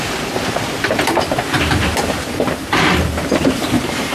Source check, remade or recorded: remade